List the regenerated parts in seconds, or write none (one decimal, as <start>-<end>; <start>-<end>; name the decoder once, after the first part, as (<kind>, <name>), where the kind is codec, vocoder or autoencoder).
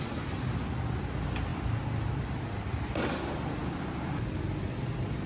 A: none